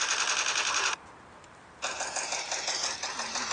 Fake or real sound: real